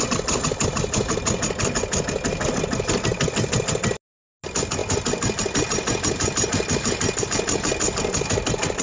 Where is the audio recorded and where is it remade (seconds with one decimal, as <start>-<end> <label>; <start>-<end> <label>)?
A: 0.0-8.8 recorded